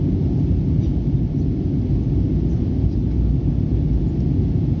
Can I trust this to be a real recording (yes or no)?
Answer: yes